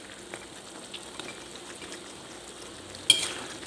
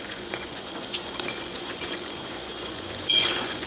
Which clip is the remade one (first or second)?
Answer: second